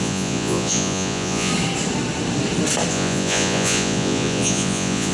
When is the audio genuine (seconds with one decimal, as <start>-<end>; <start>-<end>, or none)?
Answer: 1.5-2.9